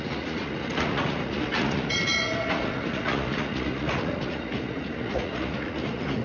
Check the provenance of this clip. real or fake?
fake